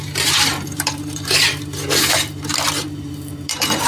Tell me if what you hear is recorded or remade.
remade